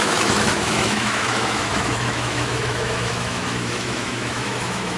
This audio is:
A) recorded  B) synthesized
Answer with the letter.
B